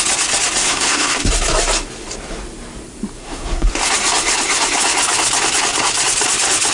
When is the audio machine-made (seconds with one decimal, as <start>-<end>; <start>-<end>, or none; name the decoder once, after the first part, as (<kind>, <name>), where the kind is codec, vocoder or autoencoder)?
0.6-1.3 (codec, SNAC); 3.2-3.7